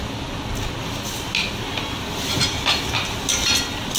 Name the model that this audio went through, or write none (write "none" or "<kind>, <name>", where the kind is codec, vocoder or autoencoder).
none